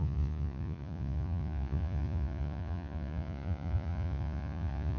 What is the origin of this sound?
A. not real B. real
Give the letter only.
A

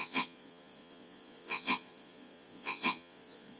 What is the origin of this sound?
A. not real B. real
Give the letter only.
A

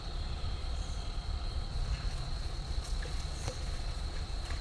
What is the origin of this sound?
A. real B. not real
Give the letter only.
B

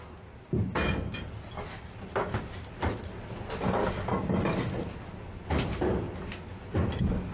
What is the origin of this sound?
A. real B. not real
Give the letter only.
A